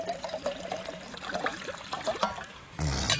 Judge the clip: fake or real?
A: real